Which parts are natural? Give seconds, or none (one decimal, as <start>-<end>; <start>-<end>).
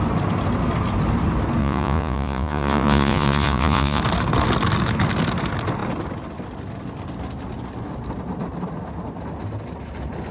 0.0-1.6; 4.0-10.3